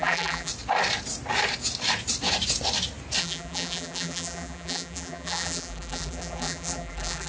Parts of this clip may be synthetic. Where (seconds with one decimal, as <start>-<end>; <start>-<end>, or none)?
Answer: 0.0-0.5; 3.2-7.3